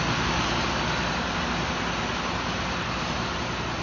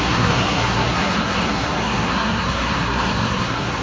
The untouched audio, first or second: first